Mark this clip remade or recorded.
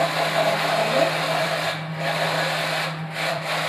remade